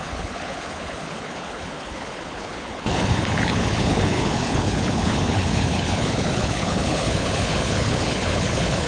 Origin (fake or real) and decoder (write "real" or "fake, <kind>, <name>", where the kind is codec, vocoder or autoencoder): fake, codec, HILCodec